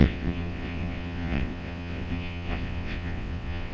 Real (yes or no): no